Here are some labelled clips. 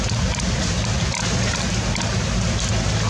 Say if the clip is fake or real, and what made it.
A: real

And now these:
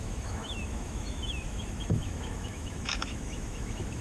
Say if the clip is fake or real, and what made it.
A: fake, autoencoder, DAC-VAE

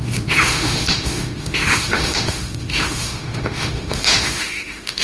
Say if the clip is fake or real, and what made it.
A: fake, autoencoder, DAC-VAE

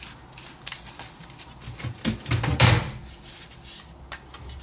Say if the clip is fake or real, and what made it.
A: real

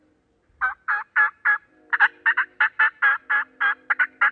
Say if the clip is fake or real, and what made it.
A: real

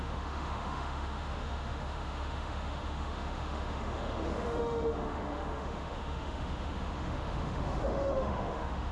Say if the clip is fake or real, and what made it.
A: fake, autoencoder, DAC-VAE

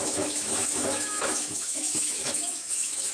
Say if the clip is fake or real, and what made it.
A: fake, autoencoder, DAC-VAE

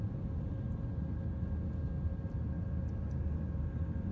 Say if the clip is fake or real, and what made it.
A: real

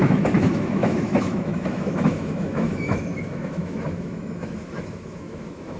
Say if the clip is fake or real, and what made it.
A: fake, autoencoder, DAC-VAE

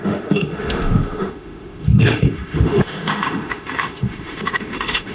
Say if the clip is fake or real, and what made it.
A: fake, autoencoder, DAC-VAE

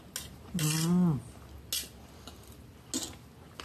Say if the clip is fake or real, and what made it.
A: real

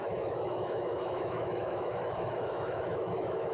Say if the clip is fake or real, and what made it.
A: fake, autoencoder, DAC-VAE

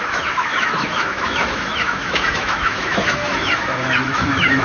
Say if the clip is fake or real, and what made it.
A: fake, autoencoder, DAC-VAE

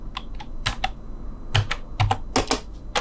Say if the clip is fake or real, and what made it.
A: real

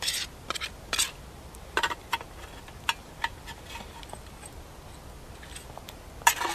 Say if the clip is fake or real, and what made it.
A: real